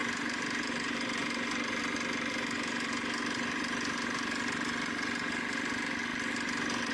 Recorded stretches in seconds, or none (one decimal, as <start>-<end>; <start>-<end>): 0.0-6.9